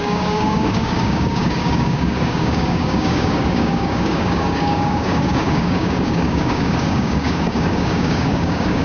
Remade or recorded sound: remade